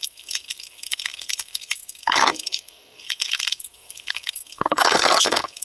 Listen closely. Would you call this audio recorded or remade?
remade